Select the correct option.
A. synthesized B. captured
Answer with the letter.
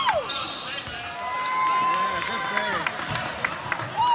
B